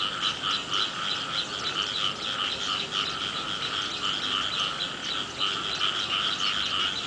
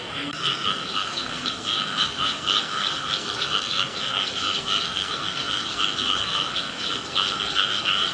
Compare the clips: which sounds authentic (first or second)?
first